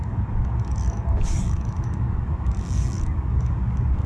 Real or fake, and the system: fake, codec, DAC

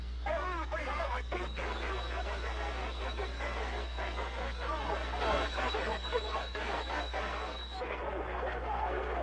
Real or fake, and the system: fake, codec, SNAC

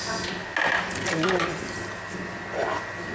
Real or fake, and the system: real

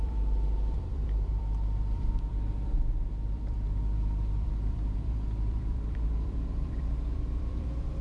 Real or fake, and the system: fake, vocoder, BigVGAN v2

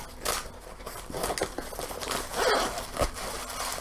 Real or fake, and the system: real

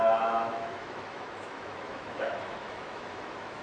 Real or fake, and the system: fake, autoencoder, DAC-VAE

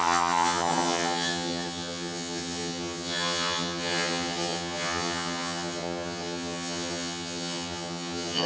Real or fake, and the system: fake, vocoder, HiFi-GAN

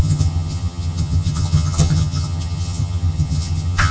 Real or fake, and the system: fake, vocoder, HiFi-GAN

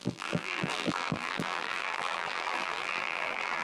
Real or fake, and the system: fake, vocoder, BigVGAN v2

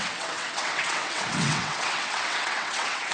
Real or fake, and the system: fake, vocoder, WaveNeXt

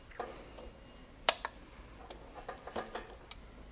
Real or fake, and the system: real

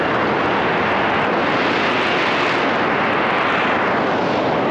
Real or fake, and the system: real